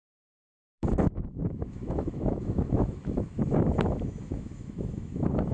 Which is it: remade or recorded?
remade